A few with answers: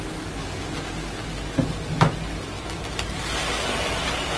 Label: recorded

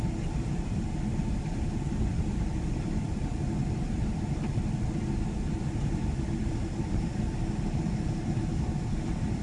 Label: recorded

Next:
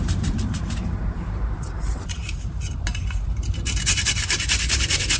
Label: remade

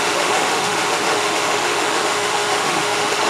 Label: remade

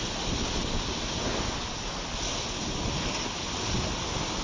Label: recorded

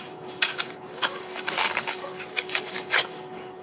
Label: remade